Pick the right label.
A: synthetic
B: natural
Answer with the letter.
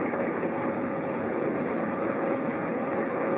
A